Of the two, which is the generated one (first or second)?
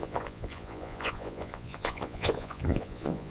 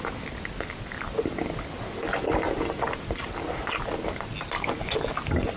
first